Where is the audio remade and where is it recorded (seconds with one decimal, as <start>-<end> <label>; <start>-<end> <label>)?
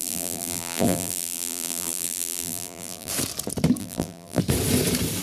0.0-3.1 remade; 3.1-3.8 recorded; 3.8-4.4 remade; 4.4-5.2 recorded